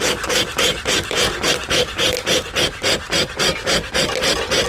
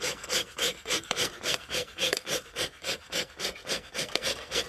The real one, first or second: first